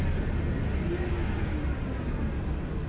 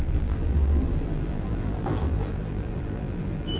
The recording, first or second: first